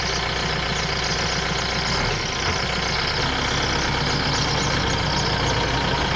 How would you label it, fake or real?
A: real